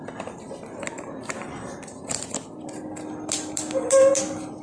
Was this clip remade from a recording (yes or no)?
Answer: no